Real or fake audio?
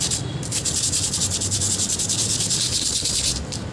real